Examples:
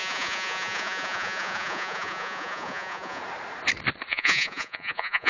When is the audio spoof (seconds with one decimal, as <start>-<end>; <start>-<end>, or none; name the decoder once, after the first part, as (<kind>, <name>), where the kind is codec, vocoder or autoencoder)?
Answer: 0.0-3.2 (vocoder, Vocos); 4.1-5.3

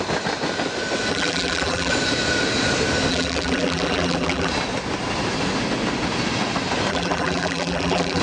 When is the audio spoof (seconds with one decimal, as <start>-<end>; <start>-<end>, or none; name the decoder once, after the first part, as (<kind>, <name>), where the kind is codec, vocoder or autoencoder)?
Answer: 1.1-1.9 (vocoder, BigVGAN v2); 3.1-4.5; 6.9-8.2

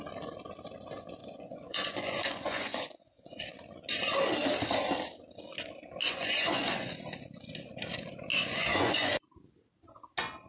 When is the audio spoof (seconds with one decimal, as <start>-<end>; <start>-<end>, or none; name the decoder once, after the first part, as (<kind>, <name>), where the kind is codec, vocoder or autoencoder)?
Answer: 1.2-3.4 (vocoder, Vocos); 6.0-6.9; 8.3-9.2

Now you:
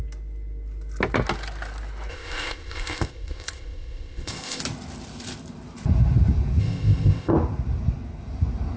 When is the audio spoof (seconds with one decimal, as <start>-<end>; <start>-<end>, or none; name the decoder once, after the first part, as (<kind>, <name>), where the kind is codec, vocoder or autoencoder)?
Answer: 2.1-4.6 (codec, ZipCodec); 6.6-7.3

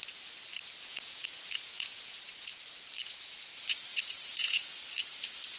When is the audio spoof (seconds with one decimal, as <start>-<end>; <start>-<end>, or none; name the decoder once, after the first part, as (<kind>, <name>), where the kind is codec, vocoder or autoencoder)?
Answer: 0.8-2.2 (vocoder, Vocos); 3.9-4.8

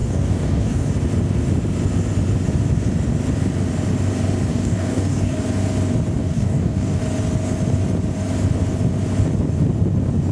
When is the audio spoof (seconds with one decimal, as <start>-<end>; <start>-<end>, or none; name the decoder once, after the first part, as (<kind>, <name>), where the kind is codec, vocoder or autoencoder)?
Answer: 0.0-0.9 (codec, DAC); 4.5-5.4; 6.2-7.0

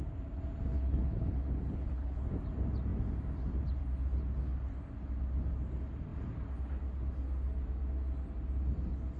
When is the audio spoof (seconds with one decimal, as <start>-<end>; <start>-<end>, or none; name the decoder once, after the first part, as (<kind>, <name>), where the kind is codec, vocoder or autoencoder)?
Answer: 0.7-2.2 (codec, HILCodec)

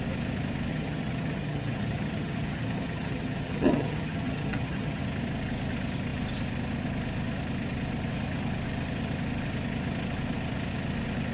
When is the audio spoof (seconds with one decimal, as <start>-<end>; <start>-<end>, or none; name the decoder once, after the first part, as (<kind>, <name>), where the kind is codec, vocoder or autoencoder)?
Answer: 0.7-5.0 (vocoder, HiFi-GAN)